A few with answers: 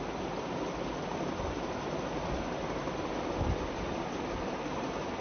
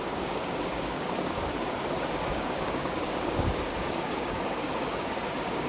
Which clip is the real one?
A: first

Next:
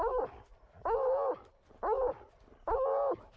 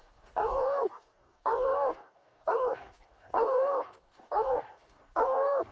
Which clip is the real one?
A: first